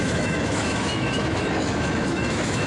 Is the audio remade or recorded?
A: remade